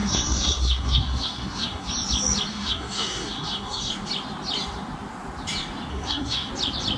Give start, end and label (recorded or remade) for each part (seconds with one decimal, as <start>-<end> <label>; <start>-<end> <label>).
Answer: 0.0-1.9 remade; 1.9-2.5 recorded; 2.5-3.9 remade; 3.9-5.9 recorded; 5.9-6.5 remade; 6.5-7.0 recorded